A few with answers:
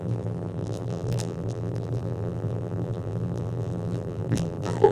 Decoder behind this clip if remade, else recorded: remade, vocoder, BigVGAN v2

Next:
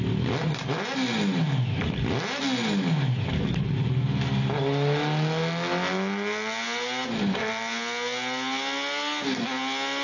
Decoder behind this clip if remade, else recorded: recorded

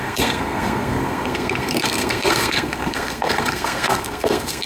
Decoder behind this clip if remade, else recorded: remade, codec, SNAC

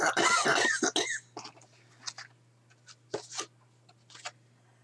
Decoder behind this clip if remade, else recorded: recorded